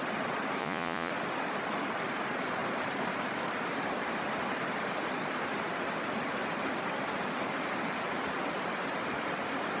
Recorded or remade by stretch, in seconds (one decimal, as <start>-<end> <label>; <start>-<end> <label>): 0.0-0.6 recorded; 0.6-1.1 remade; 1.1-9.8 recorded